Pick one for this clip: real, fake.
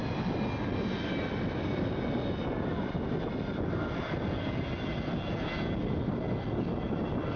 real